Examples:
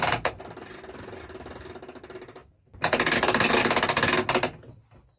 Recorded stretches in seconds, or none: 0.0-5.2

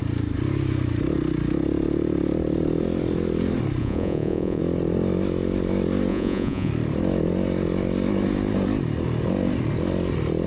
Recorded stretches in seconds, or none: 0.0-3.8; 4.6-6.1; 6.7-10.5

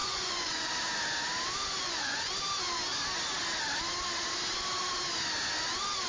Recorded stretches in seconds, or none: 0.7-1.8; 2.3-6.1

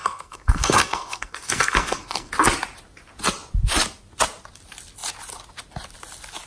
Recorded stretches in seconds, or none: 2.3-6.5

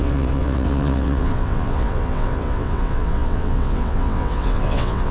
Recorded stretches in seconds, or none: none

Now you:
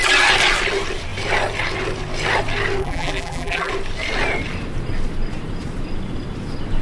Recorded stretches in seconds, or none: 0.0-2.8; 3.7-6.8

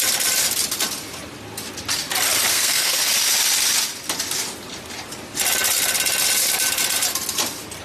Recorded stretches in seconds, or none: 0.0-2.5; 3.1-7.8